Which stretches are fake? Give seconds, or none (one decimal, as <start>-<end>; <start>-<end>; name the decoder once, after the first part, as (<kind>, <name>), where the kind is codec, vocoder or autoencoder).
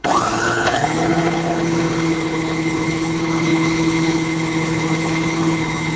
0.0-6.0 (codec, HILCodec)